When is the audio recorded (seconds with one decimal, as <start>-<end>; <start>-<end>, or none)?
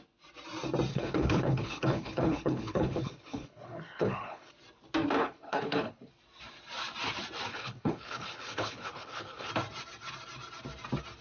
0.0-0.9; 4.5-5.2; 6.1-7.5; 9.5-11.2